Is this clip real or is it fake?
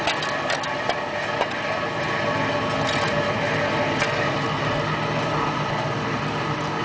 real